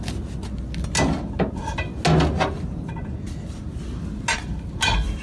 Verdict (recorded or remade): recorded